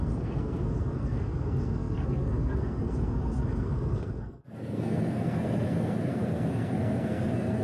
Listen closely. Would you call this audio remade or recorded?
remade